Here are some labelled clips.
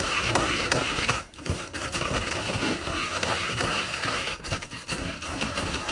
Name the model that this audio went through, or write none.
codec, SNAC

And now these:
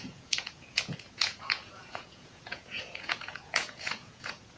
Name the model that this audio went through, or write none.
vocoder, Vocos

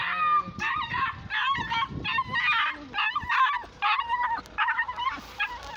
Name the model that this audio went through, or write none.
none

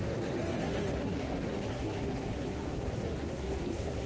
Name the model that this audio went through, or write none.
codec, SNAC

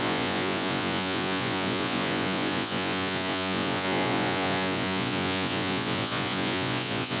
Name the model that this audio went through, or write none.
vocoder, Vocos